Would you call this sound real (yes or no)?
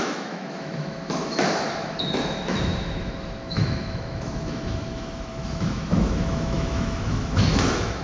no